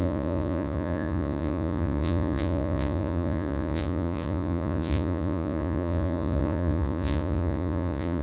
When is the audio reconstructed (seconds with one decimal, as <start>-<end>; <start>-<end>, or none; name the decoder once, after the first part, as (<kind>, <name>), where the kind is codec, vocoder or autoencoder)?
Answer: 0.0-8.2 (vocoder, Vocos)